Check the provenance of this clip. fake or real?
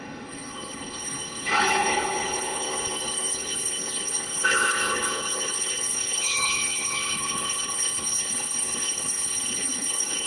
fake